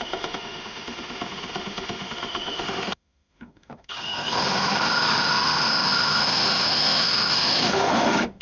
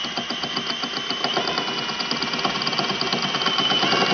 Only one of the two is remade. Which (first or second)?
first